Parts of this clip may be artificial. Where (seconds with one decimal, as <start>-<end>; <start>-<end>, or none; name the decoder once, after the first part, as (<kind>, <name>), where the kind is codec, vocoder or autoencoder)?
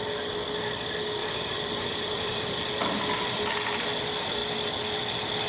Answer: 1.2-2.6 (vocoder, BigVGAN v2)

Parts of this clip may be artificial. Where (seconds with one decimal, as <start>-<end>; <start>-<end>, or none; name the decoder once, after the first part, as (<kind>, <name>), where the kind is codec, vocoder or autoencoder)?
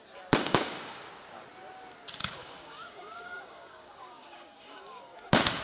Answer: 0.4-1.1 (codec, DAC); 2.2-5.6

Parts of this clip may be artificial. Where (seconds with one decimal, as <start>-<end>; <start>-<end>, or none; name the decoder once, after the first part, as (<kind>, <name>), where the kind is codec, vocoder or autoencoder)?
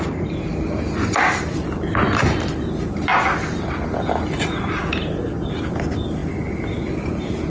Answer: 0.0-3.1 (vocoder, BigVGAN v2); 4.0-7.5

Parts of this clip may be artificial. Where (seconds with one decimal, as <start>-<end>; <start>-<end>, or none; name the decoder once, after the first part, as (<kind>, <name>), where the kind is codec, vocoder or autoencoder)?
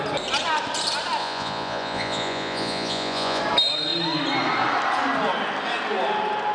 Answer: 1.2-3.4 (vocoder, Vocos)